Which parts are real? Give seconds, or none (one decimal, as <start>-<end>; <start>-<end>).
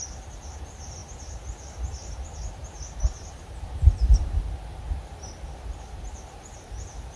0.0-2.6; 4.4-7.2